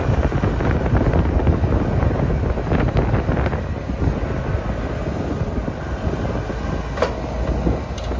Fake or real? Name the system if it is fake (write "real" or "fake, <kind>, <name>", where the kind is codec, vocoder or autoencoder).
real